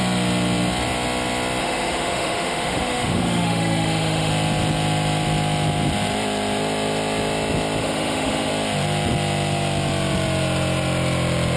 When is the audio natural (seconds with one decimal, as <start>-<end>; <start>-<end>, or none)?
0.0-1.6; 4.3-7.8; 8.5-11.6